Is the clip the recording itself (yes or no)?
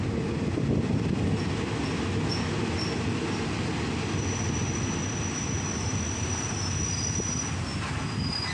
yes